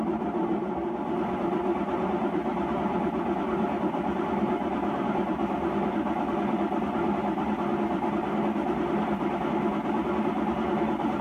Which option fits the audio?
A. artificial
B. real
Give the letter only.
B